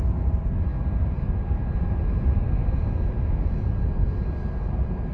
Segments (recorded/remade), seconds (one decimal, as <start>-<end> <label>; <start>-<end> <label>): 0.0-5.1 recorded